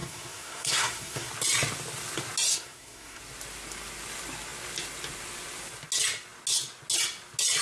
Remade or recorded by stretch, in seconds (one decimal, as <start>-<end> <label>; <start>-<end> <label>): 0.0-1.3 remade; 1.3-2.5 recorded; 2.5-3.2 remade; 3.2-7.6 recorded